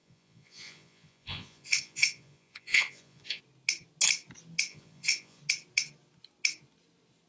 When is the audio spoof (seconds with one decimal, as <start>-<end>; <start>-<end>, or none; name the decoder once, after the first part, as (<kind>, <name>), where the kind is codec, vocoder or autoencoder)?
0.0-3.4 (vocoder, Vocos); 4.7-5.4